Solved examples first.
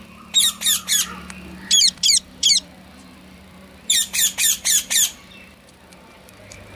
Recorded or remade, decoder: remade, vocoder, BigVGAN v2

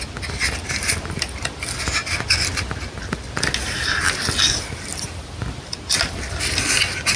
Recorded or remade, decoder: recorded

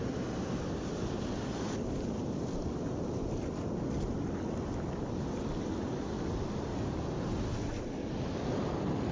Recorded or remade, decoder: recorded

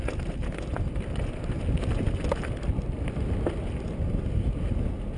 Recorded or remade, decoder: recorded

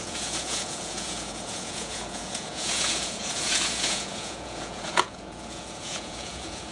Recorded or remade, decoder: remade, vocoder, Vocos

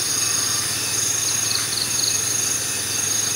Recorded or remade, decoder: recorded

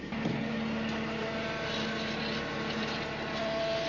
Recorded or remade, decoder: recorded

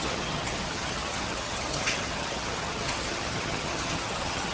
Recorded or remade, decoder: remade, vocoder, HiFi-GAN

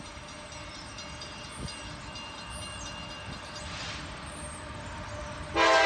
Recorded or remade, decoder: recorded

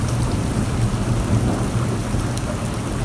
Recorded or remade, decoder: recorded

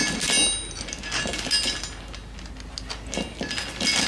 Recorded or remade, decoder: recorded